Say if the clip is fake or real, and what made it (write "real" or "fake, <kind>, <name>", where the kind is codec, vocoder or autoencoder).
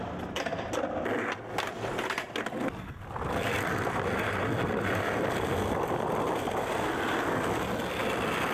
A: real